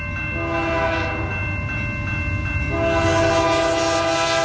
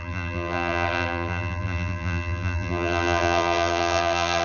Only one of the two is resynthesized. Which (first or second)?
second